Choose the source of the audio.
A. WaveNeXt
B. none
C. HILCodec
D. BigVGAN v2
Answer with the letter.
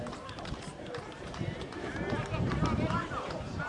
D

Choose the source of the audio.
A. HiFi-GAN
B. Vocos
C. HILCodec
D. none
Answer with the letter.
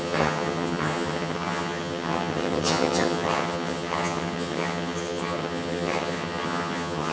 A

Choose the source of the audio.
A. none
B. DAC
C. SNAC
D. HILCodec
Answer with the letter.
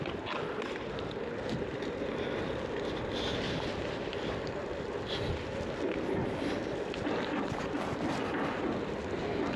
A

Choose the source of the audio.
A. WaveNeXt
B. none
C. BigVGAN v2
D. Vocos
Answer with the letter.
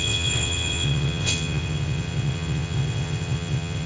A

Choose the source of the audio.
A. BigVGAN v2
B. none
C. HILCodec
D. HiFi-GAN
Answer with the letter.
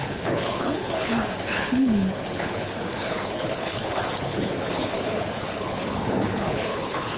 C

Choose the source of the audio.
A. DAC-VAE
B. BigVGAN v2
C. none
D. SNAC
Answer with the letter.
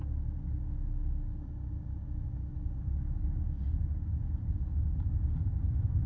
C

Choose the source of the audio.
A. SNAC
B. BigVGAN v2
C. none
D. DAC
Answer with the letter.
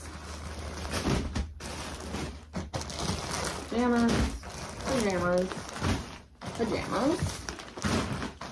C